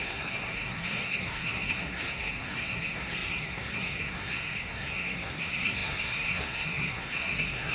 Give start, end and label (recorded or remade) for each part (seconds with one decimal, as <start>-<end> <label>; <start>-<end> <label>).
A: 0.0-7.7 remade